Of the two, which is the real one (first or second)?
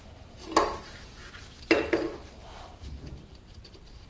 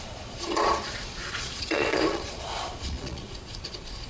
first